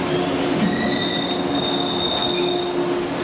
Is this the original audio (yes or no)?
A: yes